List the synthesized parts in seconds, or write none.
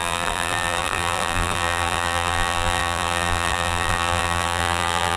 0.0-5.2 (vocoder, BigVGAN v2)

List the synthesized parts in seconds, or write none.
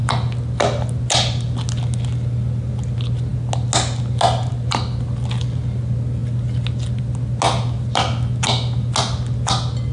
none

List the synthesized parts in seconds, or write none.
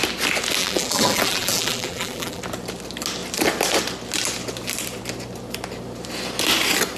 0.6-2.4 (vocoder, BigVGAN v2)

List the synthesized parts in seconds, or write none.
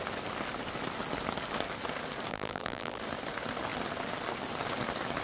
2.3-3.0 (vocoder, BigVGAN v2)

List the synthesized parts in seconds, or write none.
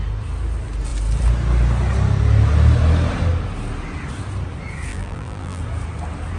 4.9-5.6 (vocoder, BigVGAN v2)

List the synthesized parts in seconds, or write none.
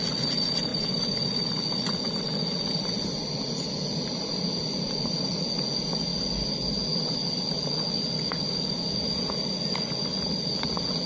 none